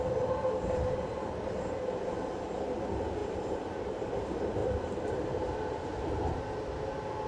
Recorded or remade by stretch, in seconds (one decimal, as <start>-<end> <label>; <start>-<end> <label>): 0.0-3.2 recorded; 3.2-4.1 remade; 4.1-4.6 recorded; 4.6-5.2 remade; 5.2-7.3 recorded